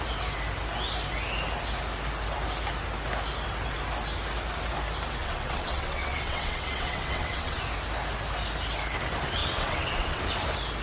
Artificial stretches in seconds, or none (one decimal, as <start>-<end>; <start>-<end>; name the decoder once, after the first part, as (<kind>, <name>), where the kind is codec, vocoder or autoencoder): 5.2-7.6 (vocoder, WaveNeXt); 9.4-10.2